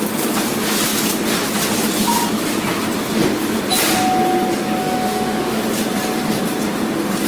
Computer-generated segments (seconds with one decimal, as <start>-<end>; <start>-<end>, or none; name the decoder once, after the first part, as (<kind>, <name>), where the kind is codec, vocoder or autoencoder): 4.8-5.6 (autoencoder, DAC-VAE)